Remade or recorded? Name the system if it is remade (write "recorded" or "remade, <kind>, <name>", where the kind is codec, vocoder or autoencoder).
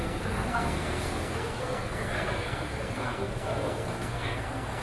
remade, codec, SNAC